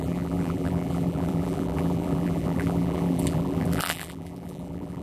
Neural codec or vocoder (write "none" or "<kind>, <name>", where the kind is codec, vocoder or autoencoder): vocoder, BigVGAN v2